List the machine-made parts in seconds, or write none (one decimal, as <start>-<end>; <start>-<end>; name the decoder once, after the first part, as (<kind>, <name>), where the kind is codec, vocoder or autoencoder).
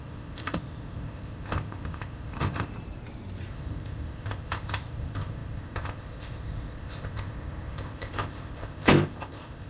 0.0-2.7 (codec, ZipCodec); 3.5-9.7